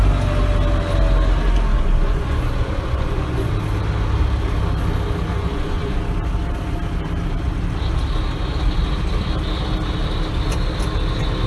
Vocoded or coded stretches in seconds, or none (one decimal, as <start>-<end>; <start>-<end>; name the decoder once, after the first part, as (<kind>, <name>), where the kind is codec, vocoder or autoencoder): 1.7-3.5 (vocoder, Vocos); 5.3-6.0